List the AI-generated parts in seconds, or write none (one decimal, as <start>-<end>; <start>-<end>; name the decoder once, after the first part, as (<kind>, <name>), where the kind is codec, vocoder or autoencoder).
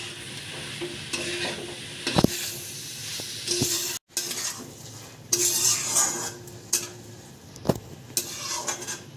none